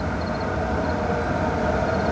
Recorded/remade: recorded